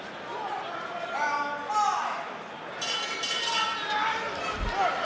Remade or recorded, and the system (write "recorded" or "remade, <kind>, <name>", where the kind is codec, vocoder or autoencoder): recorded